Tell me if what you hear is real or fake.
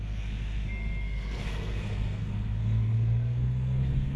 fake